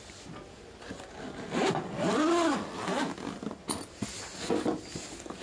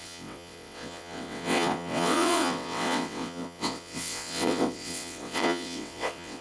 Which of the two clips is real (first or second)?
first